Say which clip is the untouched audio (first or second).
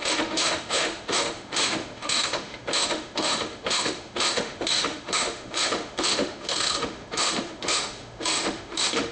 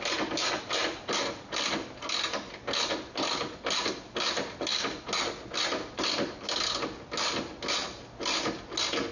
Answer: second